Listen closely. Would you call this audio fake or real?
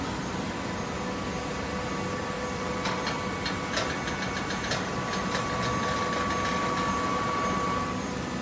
real